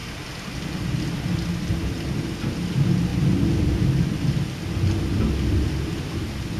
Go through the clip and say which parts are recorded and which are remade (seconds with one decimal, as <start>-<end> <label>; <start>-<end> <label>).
0.0-6.6 recorded